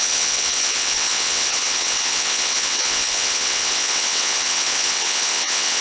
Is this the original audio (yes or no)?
no